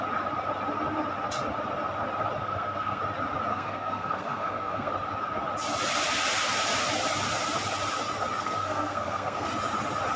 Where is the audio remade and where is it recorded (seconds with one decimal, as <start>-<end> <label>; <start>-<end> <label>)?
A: 0.0-2.4 recorded; 2.4-3.0 remade; 3.0-3.5 recorded; 3.5-4.9 remade; 4.9-8.4 recorded; 8.4-9.5 remade; 9.5-10.2 recorded